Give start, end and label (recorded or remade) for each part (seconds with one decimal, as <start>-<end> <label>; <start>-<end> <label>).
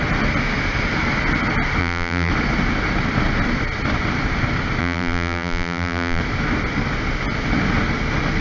0.0-1.8 recorded; 1.8-2.3 remade; 2.3-4.8 recorded; 4.8-6.2 remade; 6.2-8.4 recorded